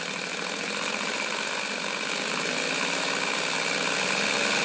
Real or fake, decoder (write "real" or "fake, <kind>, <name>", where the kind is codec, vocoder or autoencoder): real